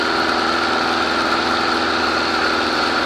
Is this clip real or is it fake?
real